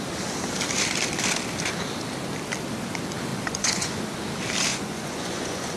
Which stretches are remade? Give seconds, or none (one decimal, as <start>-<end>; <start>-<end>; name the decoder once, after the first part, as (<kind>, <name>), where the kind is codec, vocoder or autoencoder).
3.3-4.0 (vocoder, Vocos); 4.7-5.8